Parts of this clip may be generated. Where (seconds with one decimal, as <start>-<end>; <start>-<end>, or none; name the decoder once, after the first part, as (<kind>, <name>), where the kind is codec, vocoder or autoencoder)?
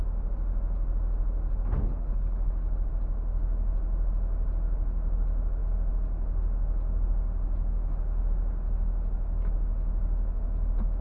1.8-2.9 (codec, HILCodec)